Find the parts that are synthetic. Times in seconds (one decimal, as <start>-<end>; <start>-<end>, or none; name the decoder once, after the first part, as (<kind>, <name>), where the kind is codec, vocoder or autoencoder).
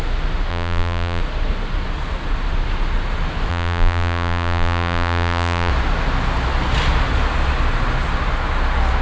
0.5-1.2 (vocoder, BigVGAN v2); 3.5-5.7